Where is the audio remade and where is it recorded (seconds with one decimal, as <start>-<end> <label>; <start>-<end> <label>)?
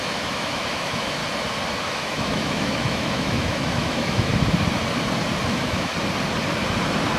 0.0-1.2 remade; 1.2-1.8 recorded; 1.8-4.3 remade; 4.3-5.5 recorded; 5.5-5.9 remade; 5.9-7.2 recorded